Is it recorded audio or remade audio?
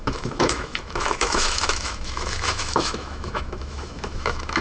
remade